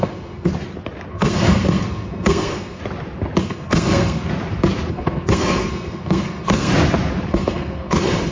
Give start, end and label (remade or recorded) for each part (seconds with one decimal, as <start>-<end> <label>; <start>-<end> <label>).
0.0-0.5 remade; 0.5-1.1 recorded; 1.1-2.8 remade; 2.8-3.4 recorded; 3.4-4.3 remade; 4.3-4.9 recorded; 4.9-6.7 remade; 6.7-7.3 recorded; 7.3-8.3 remade